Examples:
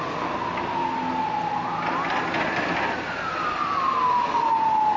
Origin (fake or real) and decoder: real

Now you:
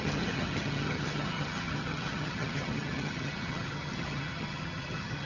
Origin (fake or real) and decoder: fake, vocoder, HiFi-GAN